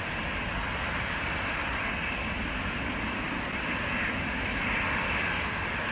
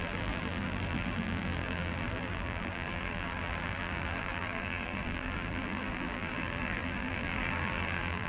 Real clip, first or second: first